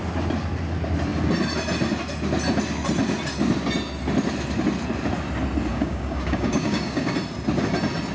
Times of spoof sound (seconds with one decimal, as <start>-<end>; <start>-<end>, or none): 5.7-7.1